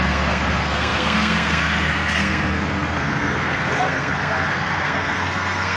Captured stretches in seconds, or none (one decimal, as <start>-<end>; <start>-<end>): none